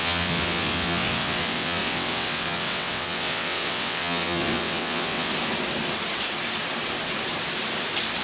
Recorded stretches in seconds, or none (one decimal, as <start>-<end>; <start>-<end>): 5.3-8.2